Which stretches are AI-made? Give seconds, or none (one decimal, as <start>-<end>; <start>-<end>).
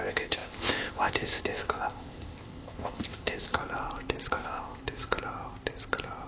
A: 0.0-3.6; 4.3-4.8